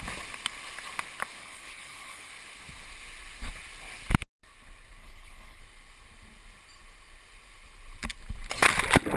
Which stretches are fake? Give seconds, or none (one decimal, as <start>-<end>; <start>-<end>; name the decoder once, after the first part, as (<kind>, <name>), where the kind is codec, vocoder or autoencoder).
1.4-2.3 (codec, HILCodec); 5.0-5.6